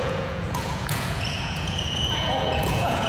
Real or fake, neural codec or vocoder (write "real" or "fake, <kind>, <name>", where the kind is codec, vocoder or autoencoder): fake, vocoder, Vocos